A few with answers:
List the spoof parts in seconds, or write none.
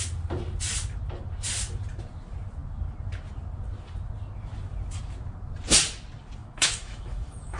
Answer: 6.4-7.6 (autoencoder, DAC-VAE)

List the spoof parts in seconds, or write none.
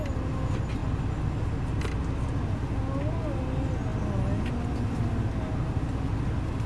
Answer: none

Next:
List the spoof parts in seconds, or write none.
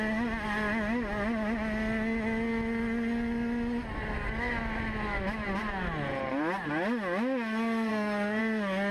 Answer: 7.9-8.4 (codec, SNAC)